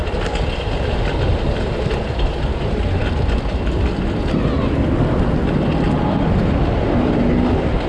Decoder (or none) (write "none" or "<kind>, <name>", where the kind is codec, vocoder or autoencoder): none